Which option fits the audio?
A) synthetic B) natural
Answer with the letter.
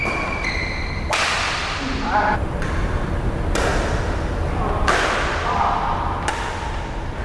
B